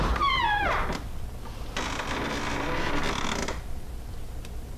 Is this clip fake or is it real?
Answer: real